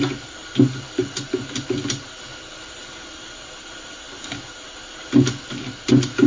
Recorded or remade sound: recorded